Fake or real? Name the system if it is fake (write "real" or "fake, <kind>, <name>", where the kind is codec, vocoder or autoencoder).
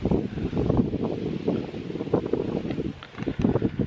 fake, vocoder, BigVGAN v2